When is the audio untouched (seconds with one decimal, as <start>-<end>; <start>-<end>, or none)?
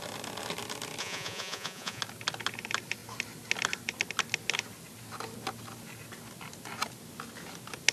0.0-1.0; 2.0-7.9